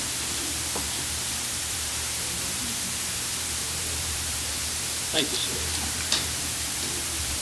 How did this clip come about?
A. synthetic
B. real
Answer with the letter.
A